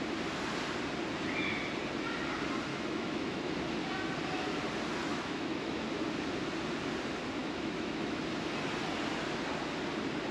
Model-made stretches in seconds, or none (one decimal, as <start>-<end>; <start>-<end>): 2.7-3.5; 5.1-5.8; 7.4-8.2